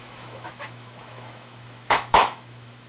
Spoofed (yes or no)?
yes